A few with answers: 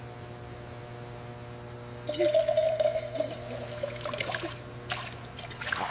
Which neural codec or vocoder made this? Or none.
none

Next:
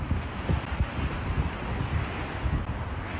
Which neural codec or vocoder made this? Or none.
none